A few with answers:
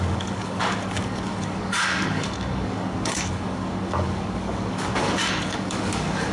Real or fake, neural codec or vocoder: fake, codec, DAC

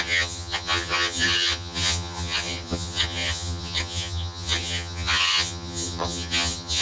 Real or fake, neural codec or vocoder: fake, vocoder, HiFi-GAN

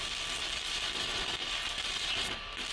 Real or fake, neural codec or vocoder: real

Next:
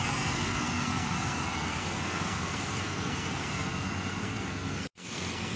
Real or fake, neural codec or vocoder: fake, codec, SNAC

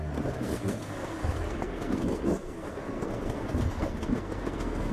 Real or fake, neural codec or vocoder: fake, codec, SNAC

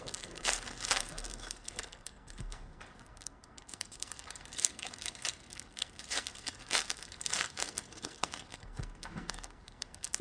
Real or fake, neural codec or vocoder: fake, codec, SNAC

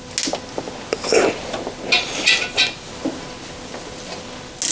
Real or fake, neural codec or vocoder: real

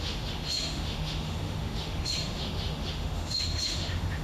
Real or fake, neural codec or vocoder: fake, autoencoder, DAC-VAE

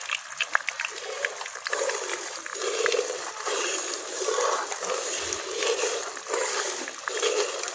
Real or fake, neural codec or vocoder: real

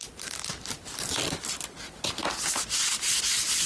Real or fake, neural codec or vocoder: real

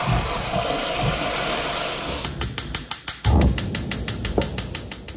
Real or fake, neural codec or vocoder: real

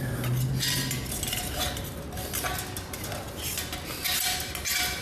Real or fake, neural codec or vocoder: real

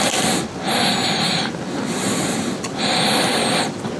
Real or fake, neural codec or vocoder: real